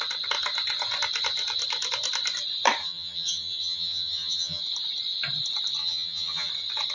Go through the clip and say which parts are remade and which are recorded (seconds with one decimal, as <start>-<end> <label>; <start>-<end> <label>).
0.0-2.8 recorded; 2.8-4.6 remade; 4.6-5.8 recorded; 5.8-6.5 remade; 6.5-6.9 recorded